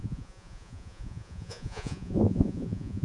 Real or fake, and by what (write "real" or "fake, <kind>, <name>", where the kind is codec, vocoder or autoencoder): fake, vocoder, Vocos